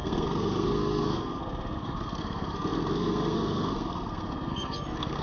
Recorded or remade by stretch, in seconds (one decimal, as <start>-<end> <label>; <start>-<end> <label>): 0.0-5.2 remade